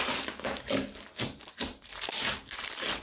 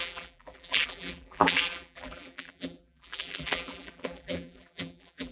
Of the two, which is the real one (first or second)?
first